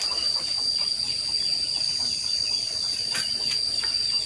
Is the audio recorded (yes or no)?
yes